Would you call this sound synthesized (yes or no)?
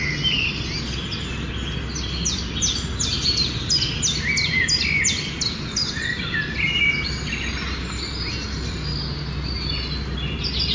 no